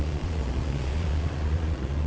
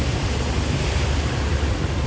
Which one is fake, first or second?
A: first